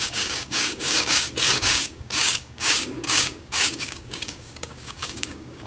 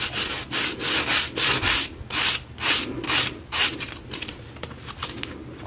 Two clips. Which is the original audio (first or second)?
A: second